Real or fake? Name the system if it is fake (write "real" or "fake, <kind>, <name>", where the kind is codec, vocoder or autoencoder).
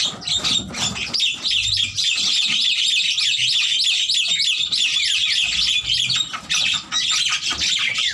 real